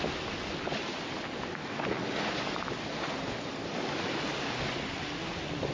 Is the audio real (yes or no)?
yes